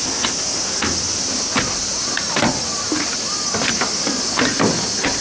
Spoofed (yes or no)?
no